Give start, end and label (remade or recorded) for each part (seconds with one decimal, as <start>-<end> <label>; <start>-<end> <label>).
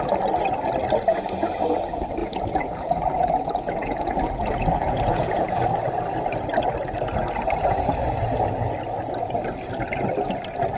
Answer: 0.0-2.2 recorded; 2.2-5.5 remade; 5.5-10.8 recorded